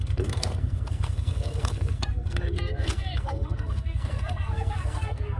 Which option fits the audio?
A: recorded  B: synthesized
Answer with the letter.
B